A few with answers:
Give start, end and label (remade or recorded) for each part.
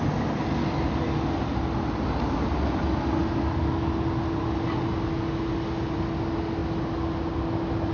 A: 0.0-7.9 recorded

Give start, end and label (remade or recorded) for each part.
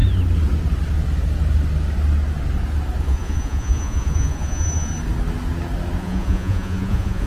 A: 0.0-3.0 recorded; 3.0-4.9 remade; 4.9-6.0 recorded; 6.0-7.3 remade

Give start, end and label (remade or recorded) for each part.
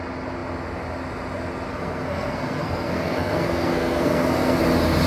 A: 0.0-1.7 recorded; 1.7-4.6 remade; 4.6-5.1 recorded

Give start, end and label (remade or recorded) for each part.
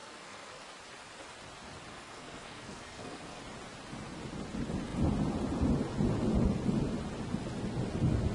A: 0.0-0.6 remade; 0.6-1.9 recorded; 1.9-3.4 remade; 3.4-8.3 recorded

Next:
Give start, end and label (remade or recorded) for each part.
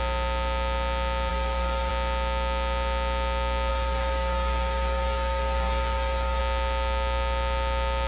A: 0.0-1.3 recorded; 1.3-1.9 remade; 1.9-3.7 recorded; 3.7-6.4 remade; 6.4-8.1 recorded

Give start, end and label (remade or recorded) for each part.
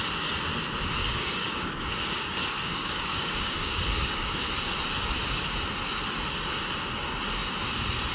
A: 0.0-1.0 recorded; 1.0-4.5 remade; 4.5-8.1 recorded